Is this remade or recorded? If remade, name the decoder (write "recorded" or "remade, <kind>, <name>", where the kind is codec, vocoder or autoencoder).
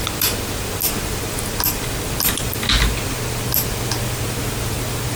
recorded